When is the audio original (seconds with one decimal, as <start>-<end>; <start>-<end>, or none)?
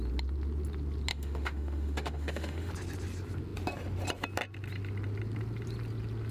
0.0-1.1; 2.7-6.3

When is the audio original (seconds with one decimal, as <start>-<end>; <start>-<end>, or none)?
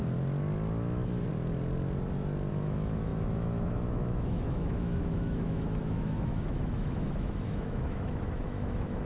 0.0-2.5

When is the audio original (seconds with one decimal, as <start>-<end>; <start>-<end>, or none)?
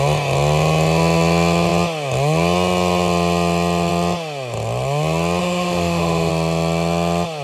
0.0-5.4; 6.3-7.4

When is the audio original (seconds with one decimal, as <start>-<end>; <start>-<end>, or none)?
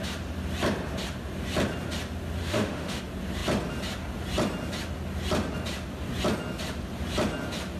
0.0-2.4; 3.0-7.8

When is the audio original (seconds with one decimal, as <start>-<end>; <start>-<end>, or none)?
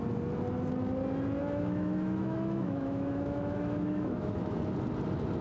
0.0-1.4; 4.6-5.4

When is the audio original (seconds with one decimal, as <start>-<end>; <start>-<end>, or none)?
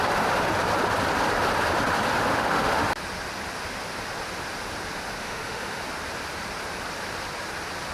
0.0-2.3; 2.9-5.2; 5.8-7.9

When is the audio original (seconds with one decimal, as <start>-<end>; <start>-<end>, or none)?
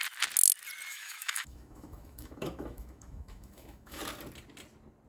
0.0-0.9; 4.0-5.1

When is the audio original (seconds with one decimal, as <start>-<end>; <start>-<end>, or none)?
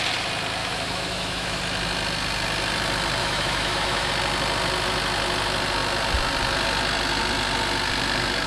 0.0-0.6; 1.6-3.2; 4.1-8.5